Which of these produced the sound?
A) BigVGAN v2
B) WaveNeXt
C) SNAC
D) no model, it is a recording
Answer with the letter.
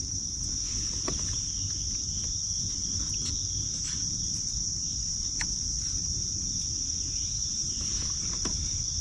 D